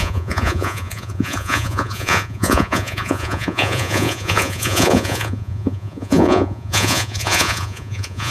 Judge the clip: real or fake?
fake